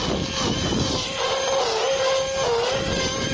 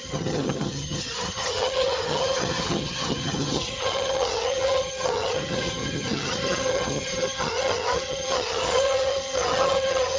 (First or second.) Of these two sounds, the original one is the first